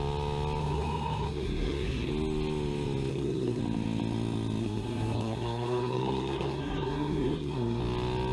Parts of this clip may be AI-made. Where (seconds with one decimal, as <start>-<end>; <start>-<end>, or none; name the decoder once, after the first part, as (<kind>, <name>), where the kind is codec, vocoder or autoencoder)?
0.6-2.1 (codec, SNAC); 3.1-3.6; 4.6-7.8